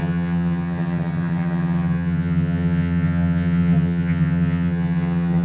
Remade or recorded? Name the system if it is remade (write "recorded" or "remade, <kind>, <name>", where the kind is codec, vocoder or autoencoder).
remade, vocoder, HiFi-GAN